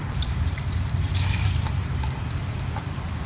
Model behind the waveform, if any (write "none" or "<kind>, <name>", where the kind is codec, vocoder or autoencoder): vocoder, BigVGAN v2